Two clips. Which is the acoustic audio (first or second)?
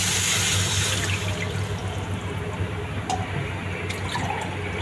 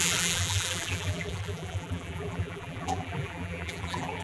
first